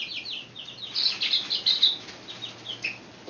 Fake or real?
real